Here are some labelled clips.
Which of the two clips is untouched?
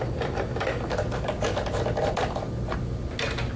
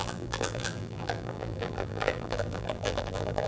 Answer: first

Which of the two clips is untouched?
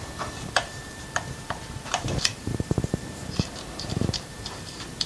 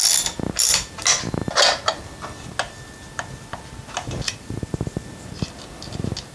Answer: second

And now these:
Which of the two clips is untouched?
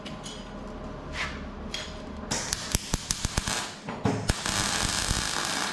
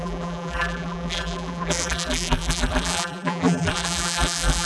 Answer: first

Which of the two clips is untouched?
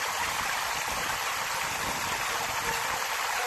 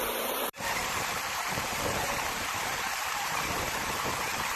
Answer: first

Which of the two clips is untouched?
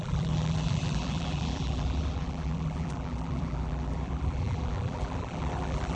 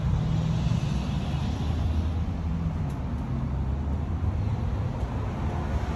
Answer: second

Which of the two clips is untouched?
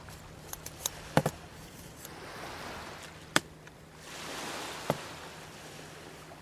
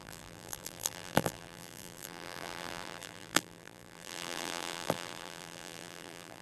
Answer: first